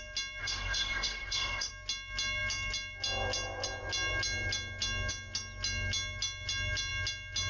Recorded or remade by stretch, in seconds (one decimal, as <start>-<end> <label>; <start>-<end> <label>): 0.0-0.4 recorded; 0.4-1.7 remade; 1.7-7.5 recorded